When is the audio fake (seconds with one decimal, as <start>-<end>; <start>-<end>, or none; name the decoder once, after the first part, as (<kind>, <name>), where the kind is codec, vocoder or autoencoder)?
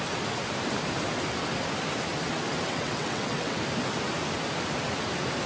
2.7-3.6 (vocoder, WaveNeXt)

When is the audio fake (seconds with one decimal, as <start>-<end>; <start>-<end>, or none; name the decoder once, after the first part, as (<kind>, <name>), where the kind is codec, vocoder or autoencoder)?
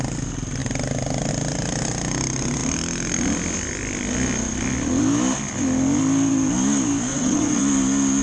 7.1-7.6 (vocoder, WaveNeXt)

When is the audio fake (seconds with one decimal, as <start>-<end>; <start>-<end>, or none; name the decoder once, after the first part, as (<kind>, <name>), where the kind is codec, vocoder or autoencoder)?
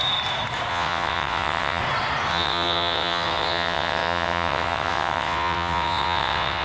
0.7-1.8 (vocoder, WaveNeXt); 2.3-6.6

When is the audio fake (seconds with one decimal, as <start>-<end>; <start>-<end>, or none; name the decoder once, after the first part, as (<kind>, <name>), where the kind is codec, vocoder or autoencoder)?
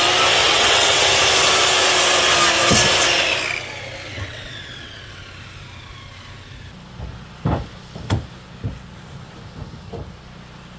0.4-1.1 (vocoder, WaveNeXt); 4.1-5.2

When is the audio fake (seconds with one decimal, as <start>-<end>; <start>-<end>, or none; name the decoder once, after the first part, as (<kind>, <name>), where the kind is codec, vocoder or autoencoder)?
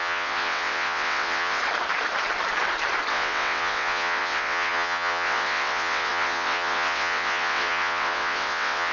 0.0-1.6 (vocoder, WaveNeXt); 3.1-8.9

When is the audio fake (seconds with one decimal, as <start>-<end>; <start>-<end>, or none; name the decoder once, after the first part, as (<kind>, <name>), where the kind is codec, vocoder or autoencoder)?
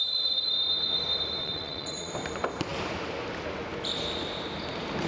1.4-2.1 (vocoder, WaveNeXt)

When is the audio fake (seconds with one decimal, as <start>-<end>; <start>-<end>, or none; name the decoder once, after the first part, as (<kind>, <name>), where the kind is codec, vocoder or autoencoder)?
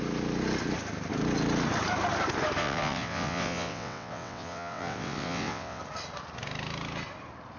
2.6-5.8 (vocoder, WaveNeXt)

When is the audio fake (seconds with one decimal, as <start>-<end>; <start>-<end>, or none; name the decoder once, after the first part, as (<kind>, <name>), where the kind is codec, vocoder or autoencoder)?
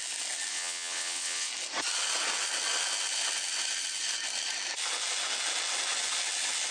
0.5-1.5 (vocoder, WaveNeXt)